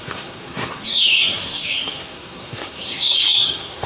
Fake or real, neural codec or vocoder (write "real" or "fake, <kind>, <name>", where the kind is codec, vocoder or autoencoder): fake, codec, SNAC